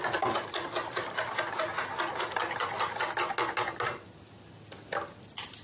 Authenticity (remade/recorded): recorded